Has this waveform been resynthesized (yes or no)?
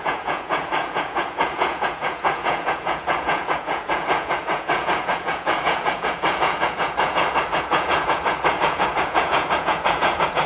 yes